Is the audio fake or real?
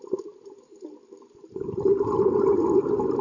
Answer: real